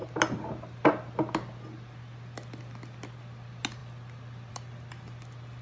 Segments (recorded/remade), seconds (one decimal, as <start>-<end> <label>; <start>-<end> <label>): 0.0-5.6 recorded